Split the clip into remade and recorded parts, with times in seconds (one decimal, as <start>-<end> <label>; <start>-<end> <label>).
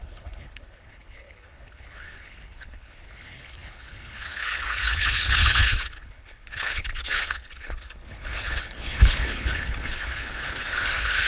0.0-11.3 remade